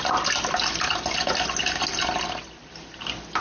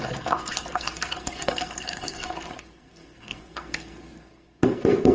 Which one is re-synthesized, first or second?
second